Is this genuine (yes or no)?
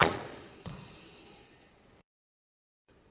no